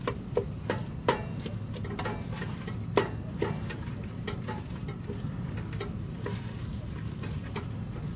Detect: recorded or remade recorded